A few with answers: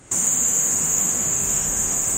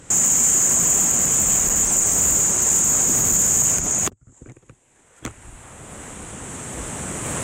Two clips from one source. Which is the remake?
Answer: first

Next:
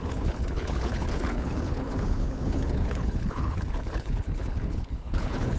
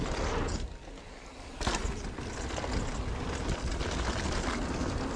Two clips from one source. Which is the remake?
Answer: first